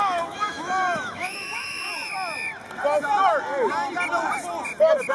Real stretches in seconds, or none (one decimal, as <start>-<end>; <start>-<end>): 1.9-5.1